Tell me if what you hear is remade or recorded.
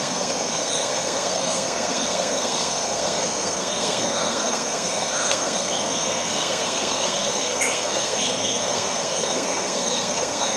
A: remade